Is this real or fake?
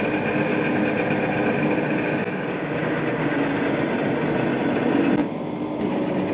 real